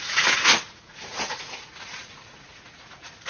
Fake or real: fake